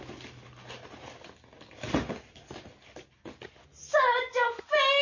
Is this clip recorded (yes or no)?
yes